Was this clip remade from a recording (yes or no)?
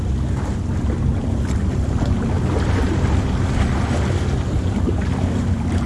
no